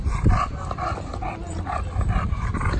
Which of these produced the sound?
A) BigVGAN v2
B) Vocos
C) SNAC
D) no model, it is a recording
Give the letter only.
D